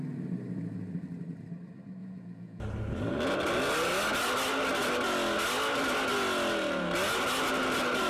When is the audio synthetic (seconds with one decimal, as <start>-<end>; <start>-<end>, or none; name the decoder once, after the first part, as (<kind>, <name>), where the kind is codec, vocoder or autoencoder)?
2.0-2.6 (vocoder, Vocos)